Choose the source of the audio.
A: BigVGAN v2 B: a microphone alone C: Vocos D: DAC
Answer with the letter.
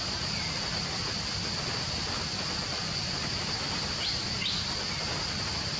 B